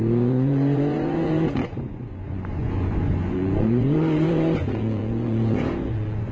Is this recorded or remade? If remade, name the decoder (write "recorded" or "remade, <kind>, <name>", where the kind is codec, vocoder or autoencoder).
remade, vocoder, Vocos